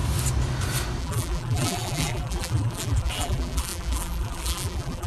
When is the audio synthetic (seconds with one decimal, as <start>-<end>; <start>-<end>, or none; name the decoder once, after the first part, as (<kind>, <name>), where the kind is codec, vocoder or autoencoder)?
1.0-5.1 (vocoder, BigVGAN v2)

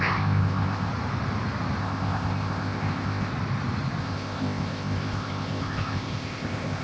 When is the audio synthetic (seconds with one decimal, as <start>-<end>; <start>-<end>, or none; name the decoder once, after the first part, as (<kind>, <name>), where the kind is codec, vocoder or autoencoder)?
0.0-0.9 (codec, ZipCodec); 1.8-3.3; 4.0-6.8

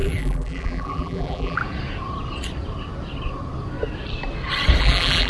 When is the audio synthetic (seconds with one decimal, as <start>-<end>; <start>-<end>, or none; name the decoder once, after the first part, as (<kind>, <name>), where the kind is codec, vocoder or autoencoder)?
0.0-1.6 (vocoder, BigVGAN v2); 4.8-5.3

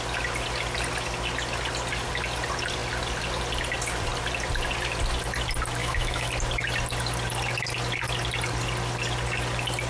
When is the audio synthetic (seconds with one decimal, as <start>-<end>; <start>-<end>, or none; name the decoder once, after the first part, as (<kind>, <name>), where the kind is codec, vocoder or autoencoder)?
5.8-6.3 (autoencoder, DAC-VAE)

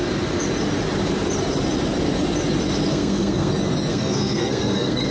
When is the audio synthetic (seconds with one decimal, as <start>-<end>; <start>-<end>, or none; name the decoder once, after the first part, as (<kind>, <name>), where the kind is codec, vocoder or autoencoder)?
2.9-3.5 (codec, SNAC); 3.9-5.1

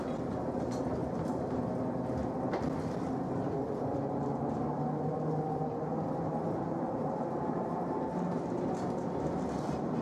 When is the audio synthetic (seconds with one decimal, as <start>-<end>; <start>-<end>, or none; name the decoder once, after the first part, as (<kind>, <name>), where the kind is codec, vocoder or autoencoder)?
1.0-1.6 (vocoder, BigVGAN v2); 3.9-8.0

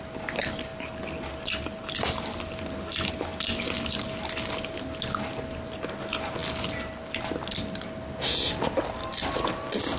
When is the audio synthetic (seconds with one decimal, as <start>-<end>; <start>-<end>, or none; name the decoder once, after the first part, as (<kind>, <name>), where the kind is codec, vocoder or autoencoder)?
none

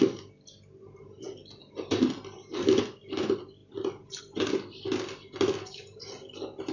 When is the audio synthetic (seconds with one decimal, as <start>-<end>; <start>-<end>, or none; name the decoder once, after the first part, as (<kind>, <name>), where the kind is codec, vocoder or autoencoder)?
none